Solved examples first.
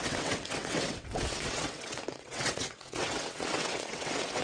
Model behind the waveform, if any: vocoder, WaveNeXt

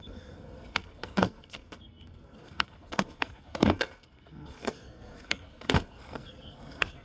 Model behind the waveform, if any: codec, SNAC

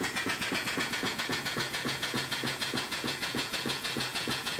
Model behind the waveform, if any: vocoder, Vocos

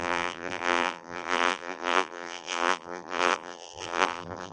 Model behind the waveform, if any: vocoder, BigVGAN v2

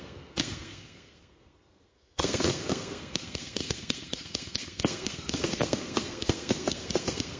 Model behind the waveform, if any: codec, SNAC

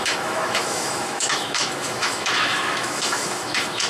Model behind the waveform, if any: autoencoder, DAC-VAE